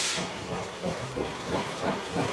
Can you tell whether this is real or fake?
fake